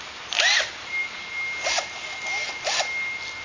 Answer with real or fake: real